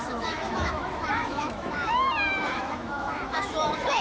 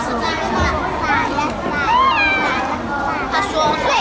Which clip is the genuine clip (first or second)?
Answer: second